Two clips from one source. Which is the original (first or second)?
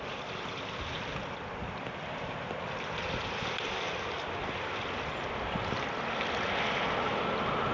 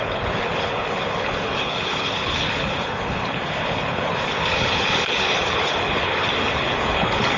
first